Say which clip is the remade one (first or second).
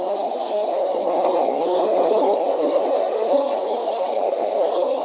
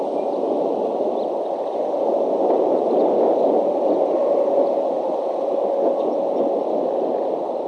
first